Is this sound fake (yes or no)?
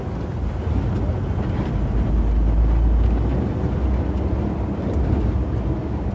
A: no